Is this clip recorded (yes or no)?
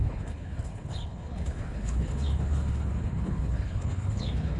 no